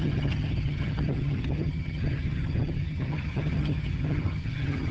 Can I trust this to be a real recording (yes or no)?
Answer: no